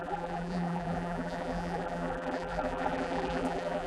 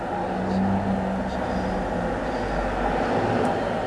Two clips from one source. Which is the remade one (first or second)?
first